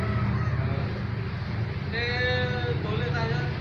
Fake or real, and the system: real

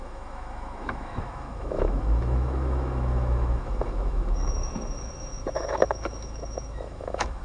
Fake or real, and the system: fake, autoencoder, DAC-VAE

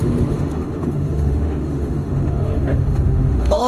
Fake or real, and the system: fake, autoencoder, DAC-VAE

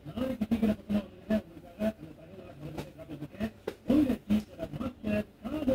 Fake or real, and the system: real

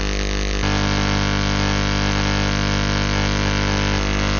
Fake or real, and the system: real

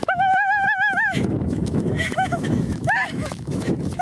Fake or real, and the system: fake, autoencoder, DAC-VAE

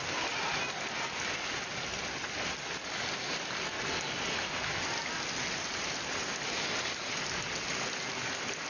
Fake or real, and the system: real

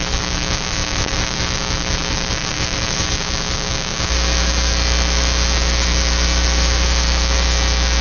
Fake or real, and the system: fake, autoencoder, DAC-VAE